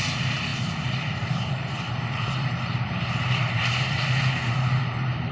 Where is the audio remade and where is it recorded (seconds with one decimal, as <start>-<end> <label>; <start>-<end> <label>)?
0.0-5.3 remade